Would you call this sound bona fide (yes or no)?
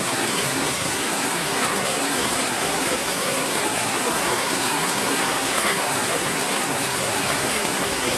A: no